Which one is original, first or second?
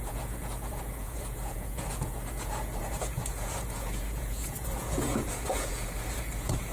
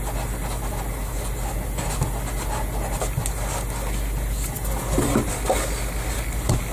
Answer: second